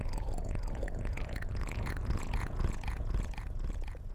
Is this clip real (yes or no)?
no